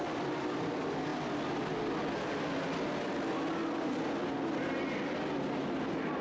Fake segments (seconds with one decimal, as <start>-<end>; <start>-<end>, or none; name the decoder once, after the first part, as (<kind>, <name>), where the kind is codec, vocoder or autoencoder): none